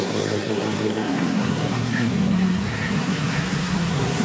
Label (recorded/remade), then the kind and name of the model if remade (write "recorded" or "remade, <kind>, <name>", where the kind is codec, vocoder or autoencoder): remade, codec, SNAC